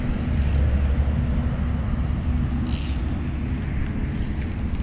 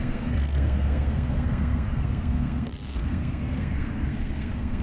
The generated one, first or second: second